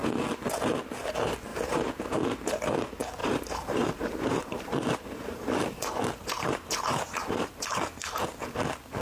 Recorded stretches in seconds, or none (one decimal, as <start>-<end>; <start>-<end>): 0.0-1.5; 2.0-3.2; 7.7-9.0